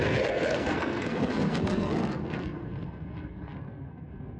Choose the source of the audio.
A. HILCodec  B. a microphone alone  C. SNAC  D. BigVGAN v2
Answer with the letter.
C